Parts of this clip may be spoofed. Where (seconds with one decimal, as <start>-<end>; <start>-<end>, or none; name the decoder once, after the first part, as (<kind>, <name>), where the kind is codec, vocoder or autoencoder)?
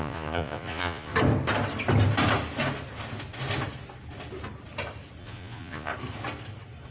0.0-1.1 (vocoder, Vocos); 5.2-5.9